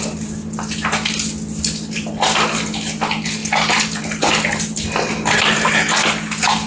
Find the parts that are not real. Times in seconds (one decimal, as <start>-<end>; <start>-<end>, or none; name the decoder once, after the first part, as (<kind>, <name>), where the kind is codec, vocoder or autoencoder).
none